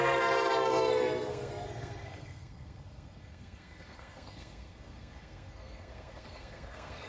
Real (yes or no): no